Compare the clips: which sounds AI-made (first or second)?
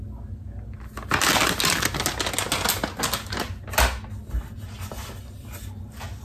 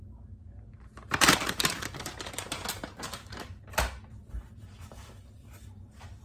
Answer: second